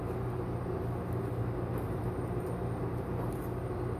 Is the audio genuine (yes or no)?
no